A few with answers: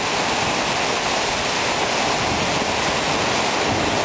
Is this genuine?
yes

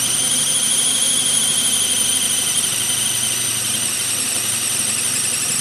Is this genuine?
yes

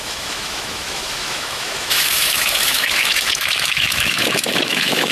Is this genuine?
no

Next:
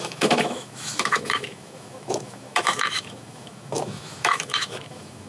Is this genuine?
no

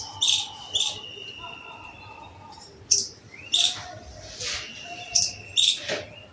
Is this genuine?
yes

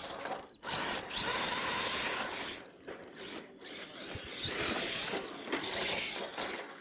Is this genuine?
yes